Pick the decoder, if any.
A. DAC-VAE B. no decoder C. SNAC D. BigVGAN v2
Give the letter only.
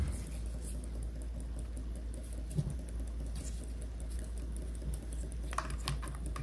B